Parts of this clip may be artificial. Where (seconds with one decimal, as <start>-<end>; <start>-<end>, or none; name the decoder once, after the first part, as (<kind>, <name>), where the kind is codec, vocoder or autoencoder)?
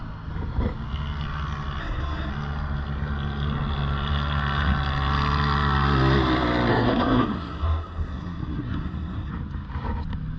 1.8-2.3 (codec, SNAC); 6.7-9.3